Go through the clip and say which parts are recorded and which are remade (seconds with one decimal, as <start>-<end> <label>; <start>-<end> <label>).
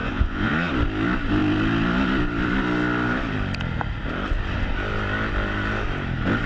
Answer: 0.0-0.5 remade; 0.5-6.5 recorded